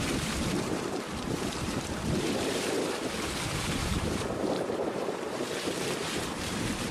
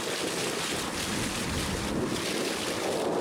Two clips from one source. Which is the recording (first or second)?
second